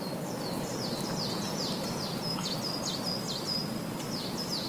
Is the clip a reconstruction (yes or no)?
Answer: no